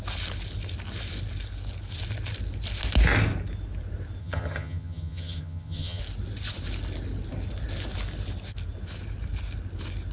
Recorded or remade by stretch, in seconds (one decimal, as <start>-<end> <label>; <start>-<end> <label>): 0.0-4.2 recorded; 4.2-6.0 remade; 6.0-10.1 recorded